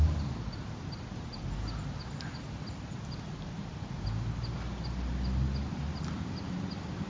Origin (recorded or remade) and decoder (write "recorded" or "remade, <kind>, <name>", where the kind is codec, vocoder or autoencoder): recorded